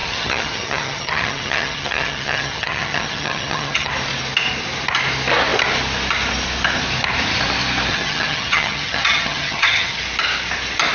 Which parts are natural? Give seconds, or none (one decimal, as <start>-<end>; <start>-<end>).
3.9-7.9; 10.0-10.9